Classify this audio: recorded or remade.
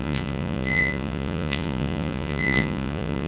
remade